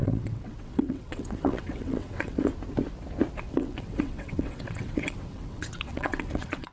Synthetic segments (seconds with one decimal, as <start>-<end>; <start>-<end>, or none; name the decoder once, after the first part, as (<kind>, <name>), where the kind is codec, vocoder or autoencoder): 0.0-2.5 (vocoder, WaveNeXt); 3.5-6.7